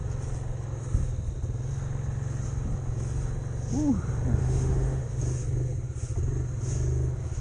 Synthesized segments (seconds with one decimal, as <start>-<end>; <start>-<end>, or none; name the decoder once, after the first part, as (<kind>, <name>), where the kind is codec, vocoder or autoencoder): 4.4-5.2 (autoencoder, DAC-VAE)